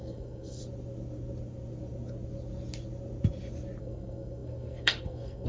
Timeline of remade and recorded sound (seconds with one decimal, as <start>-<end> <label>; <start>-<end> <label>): 0.0-0.6 remade; 0.6-3.8 recorded; 3.8-5.5 remade